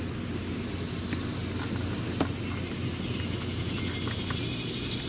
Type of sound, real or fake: real